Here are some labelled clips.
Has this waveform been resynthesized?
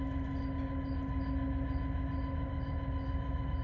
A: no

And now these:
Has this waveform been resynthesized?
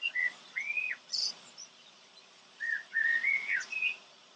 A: yes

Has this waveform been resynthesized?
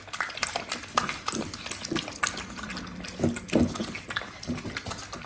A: no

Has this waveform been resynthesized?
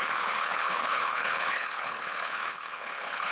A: yes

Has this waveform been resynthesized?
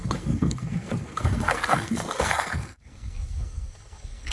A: yes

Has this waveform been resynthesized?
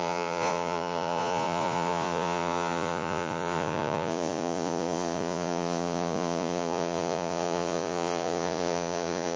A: yes